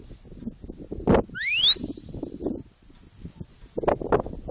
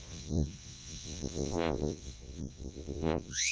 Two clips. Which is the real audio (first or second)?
first